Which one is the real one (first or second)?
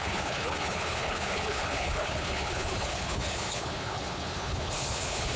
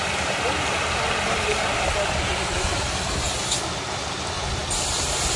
second